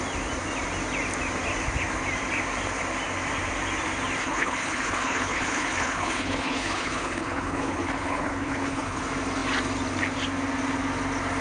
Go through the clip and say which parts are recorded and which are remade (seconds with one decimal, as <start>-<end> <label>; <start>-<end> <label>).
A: 0.0-4.2 recorded; 4.2-9.0 remade; 9.0-11.4 recorded